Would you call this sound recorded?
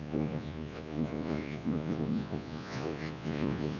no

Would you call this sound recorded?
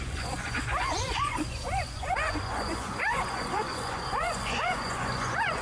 no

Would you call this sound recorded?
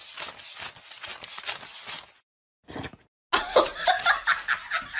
yes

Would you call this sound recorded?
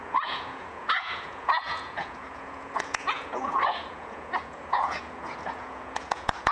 no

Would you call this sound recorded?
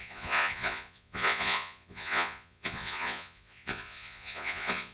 no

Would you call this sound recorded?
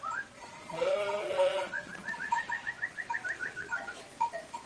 no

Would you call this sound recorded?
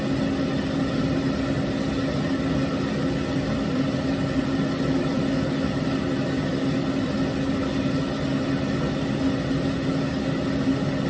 yes